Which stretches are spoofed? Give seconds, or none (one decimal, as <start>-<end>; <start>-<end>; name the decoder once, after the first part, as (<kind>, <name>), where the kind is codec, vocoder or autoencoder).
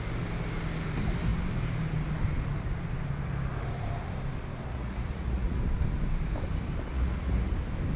4.7-5.6 (vocoder, Vocos); 6.9-7.5